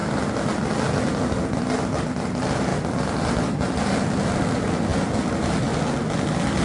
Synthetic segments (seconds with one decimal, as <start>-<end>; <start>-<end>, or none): 0.0-1.6; 2.7-4.3